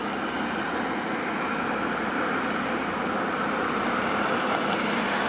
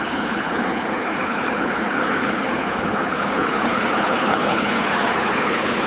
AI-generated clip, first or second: second